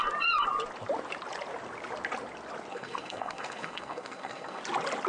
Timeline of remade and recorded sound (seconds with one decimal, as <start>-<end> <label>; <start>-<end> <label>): 0.0-2.7 recorded; 2.7-4.6 remade; 4.6-5.1 recorded